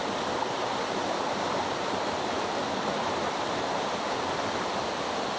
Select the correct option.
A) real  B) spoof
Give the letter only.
A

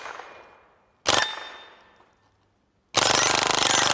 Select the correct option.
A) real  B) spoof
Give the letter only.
A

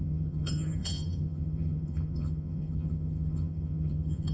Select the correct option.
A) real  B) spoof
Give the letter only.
B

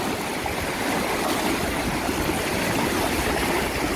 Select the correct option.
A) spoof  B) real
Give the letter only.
B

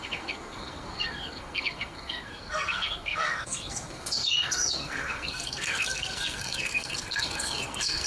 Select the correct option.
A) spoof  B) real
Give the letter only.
A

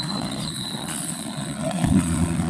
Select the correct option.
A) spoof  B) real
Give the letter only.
A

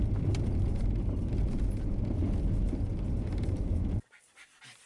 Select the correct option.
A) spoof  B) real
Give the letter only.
B